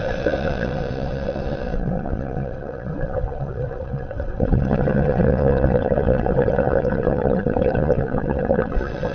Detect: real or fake fake